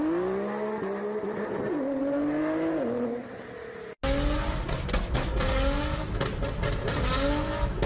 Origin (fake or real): real